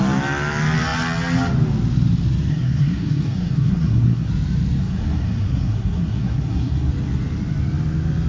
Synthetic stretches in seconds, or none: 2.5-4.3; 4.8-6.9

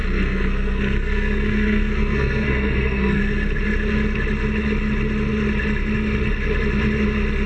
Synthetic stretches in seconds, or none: 0.0-3.2

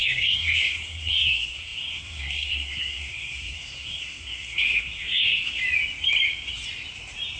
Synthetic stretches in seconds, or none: 0.0-5.6

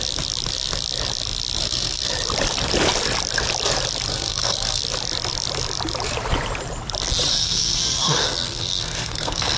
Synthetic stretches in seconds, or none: 1.6-2.1; 4.1-4.8; 7.3-9.6

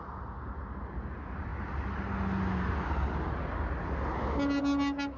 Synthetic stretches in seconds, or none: none